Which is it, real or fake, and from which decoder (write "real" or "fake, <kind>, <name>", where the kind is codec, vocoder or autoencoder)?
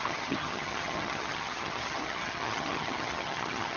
fake, vocoder, HiFi-GAN